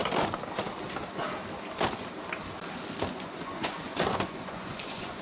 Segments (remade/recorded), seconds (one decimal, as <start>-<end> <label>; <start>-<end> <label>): 0.0-3.1 recorded; 3.1-5.2 remade